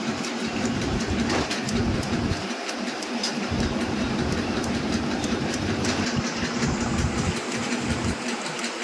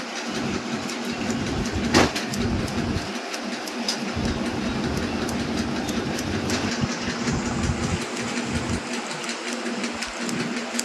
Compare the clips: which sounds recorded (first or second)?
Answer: second